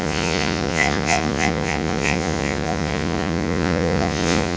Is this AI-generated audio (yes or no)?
yes